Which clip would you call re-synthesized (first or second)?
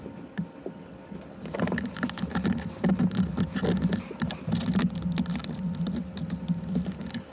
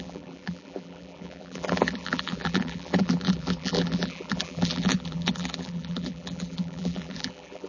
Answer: second